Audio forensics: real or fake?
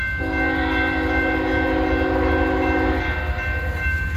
real